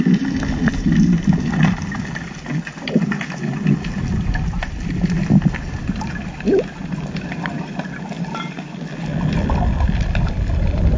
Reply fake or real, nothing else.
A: real